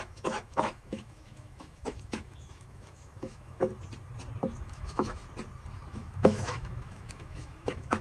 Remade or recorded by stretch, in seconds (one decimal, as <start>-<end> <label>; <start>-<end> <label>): 0.0-3.7 remade; 3.7-4.6 recorded; 4.6-5.2 remade; 5.2-5.9 recorded; 5.9-8.0 remade